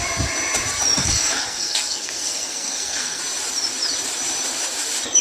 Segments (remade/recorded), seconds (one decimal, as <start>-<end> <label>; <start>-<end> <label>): 0.0-1.0 recorded; 1.0-3.2 remade; 3.2-5.2 recorded